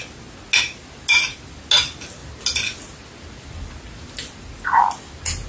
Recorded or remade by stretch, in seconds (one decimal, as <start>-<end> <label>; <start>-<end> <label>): 0.0-5.5 recorded